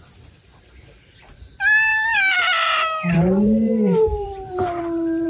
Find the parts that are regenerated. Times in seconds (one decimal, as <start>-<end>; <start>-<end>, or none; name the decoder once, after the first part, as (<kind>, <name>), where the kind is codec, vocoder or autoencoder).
1.9-4.8 (vocoder, BigVGAN v2)